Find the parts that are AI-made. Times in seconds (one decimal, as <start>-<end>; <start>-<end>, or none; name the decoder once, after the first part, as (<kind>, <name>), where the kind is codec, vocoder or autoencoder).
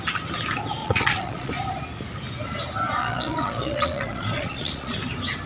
0.8-1.5 (vocoder, Vocos); 3.0-5.0